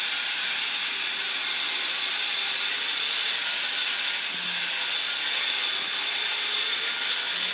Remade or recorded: recorded